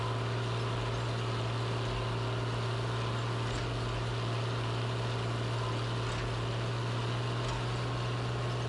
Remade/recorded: recorded